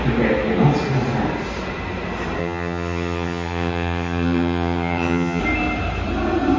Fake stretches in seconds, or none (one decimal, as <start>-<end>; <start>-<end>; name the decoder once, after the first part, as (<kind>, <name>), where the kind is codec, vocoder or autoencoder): 2.4-5.4 (vocoder, HiFi-GAN)